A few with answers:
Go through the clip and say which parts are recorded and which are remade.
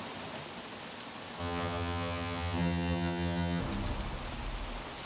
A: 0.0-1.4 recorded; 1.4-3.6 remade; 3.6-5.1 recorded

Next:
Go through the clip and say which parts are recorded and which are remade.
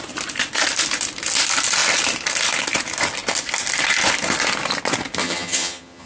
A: 0.0-5.2 recorded; 5.2-6.1 remade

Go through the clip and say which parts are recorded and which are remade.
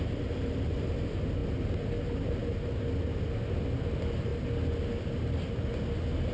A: 0.0-6.3 recorded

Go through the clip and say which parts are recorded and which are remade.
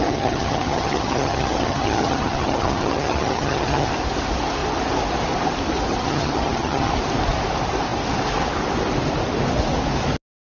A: 0.0-3.9 remade; 3.9-5.9 recorded; 5.9-6.9 remade; 6.9-10.5 recorded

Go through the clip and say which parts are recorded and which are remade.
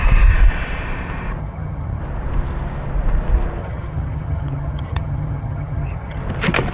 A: 0.0-1.4 recorded; 1.4-2.0 remade; 2.0-3.6 recorded; 3.6-6.2 remade; 6.2-6.7 recorded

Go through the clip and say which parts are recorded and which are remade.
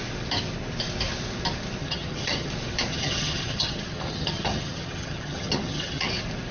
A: 0.0-1.8 recorded; 1.8-2.5 remade; 2.5-2.9 recorded; 2.9-6.1 remade; 6.1-6.5 recorded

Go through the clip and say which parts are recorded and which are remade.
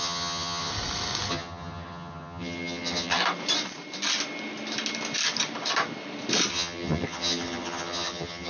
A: 0.0-0.7 remade; 0.7-1.3 recorded; 1.3-3.2 remade; 3.2-6.5 recorded; 6.5-8.5 remade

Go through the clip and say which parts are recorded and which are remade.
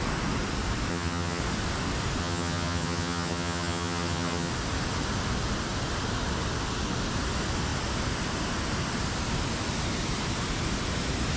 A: 0.0-0.9 recorded; 0.9-1.4 remade; 1.4-2.2 recorded; 2.2-4.5 remade; 4.5-11.4 recorded